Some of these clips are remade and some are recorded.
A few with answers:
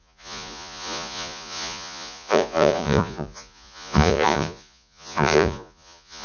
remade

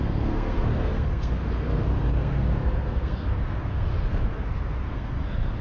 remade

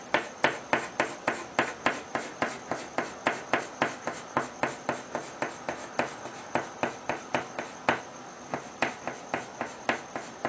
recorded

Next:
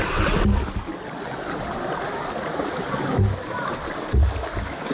recorded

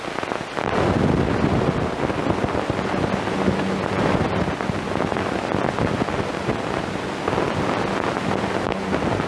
recorded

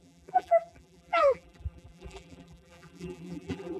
remade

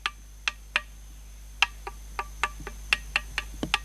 recorded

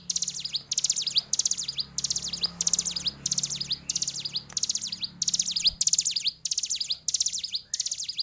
recorded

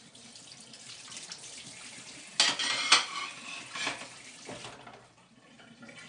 recorded